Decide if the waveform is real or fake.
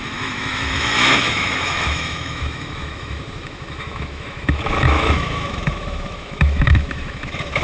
fake